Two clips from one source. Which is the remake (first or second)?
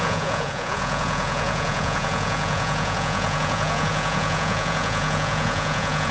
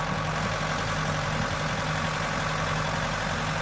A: first